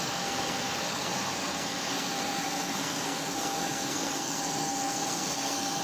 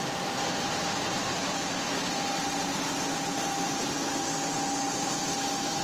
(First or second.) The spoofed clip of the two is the first